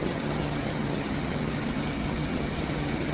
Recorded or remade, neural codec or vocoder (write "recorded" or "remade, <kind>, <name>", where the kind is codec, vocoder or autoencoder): remade, vocoder, HiFi-GAN